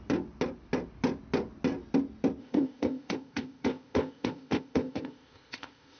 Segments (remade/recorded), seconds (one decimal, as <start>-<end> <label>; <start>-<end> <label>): 0.0-2.4 recorded; 2.4-6.0 remade